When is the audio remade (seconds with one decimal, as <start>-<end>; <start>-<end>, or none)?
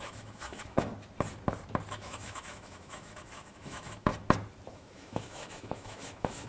0.0-0.9; 1.9-4.1; 4.7-6.5